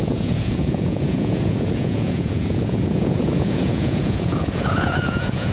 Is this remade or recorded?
remade